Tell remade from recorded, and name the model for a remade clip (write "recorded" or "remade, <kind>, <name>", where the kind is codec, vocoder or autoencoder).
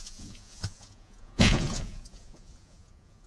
remade, vocoder, Vocos